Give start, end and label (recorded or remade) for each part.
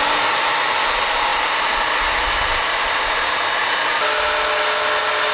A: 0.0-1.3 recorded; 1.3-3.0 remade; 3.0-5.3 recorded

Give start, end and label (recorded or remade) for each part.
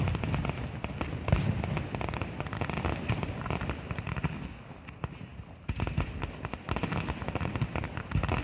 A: 0.0-8.4 recorded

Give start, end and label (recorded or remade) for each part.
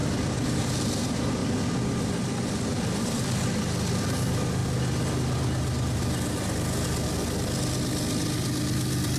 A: 0.0-0.6 remade; 0.6-1.4 recorded; 1.4-3.5 remade; 3.5-9.2 recorded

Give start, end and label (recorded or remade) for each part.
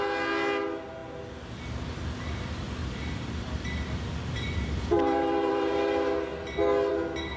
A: 0.0-2.8 recorded; 2.8-5.7 remade; 5.7-7.4 recorded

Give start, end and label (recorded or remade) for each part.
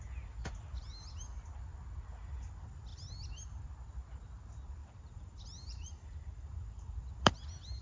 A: 0.0-4.8 recorded; 4.8-7.3 remade; 7.3-7.8 recorded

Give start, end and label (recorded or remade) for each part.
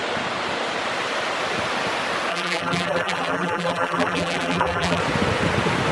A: 0.0-2.3 recorded; 2.3-5.0 remade; 5.0-5.9 recorded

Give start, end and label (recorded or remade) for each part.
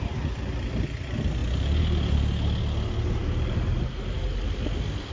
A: 0.0-3.2 recorded; 3.2-3.8 remade; 3.8-5.1 recorded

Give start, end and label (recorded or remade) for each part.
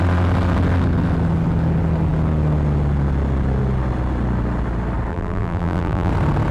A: 0.0-5.1 recorded; 5.1-6.1 remade; 6.1-6.5 recorded